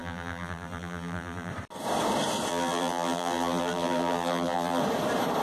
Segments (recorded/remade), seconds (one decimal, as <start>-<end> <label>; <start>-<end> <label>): 0.0-1.5 remade; 1.5-2.5 recorded; 2.5-4.8 remade; 4.8-5.4 recorded